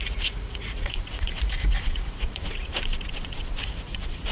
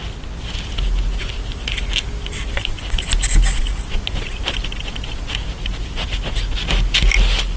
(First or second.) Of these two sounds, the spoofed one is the first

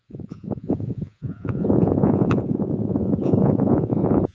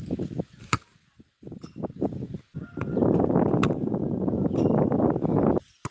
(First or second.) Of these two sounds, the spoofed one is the first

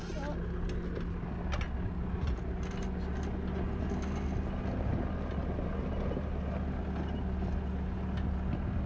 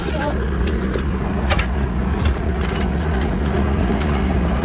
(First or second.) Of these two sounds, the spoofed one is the second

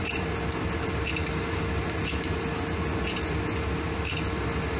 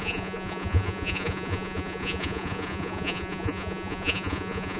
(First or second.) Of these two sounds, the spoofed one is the second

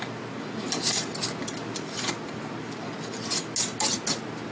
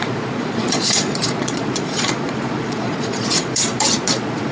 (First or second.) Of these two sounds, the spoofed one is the second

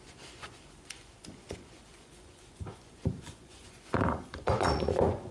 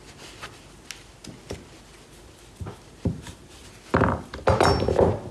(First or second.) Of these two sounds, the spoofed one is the first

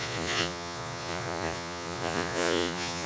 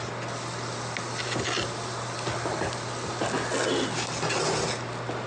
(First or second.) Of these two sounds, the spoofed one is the first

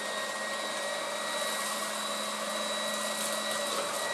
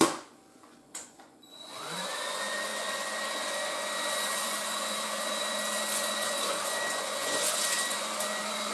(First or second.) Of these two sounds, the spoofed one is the second